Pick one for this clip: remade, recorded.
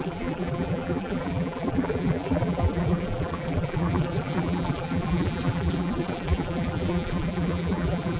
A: remade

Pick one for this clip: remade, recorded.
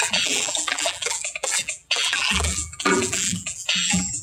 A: remade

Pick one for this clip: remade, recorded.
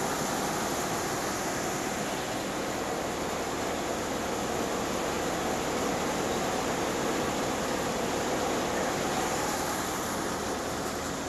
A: recorded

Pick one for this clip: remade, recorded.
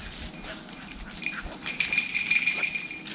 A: recorded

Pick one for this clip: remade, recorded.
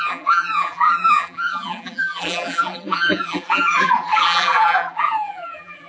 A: remade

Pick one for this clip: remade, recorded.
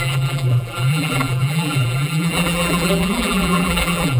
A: remade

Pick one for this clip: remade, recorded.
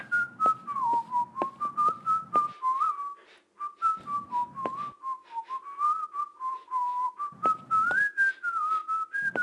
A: recorded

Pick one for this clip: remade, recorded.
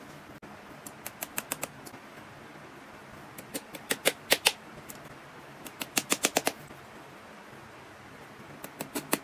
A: recorded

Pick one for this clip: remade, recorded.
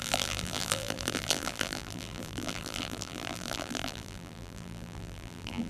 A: remade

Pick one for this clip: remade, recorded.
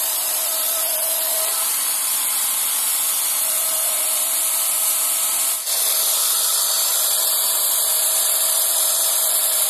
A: remade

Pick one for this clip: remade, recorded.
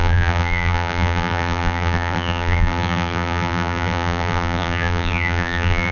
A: remade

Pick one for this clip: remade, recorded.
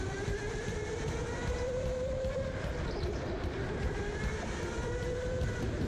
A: remade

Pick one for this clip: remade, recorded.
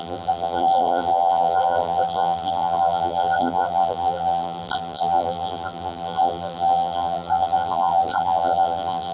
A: remade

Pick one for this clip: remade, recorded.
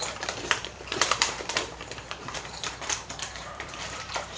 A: remade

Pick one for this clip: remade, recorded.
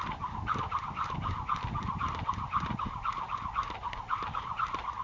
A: recorded